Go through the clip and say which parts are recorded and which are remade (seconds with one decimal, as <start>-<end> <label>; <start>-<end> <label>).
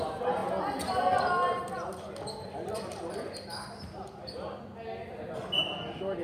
0.0-6.2 recorded